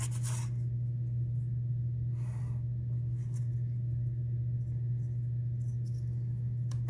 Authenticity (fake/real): real